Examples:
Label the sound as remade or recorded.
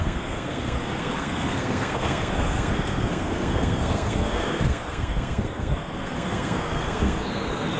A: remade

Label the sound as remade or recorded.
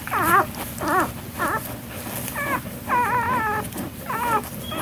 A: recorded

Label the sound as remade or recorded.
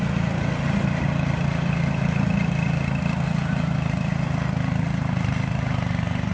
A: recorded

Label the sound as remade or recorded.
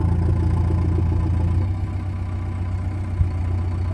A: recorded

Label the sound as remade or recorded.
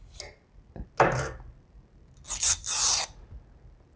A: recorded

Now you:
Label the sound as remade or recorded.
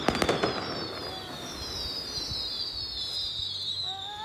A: recorded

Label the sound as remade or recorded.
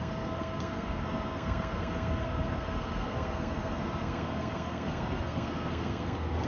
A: remade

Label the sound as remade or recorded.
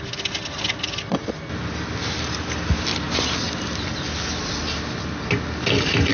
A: recorded